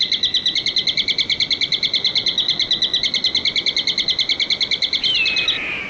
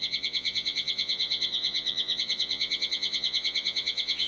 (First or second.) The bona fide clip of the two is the first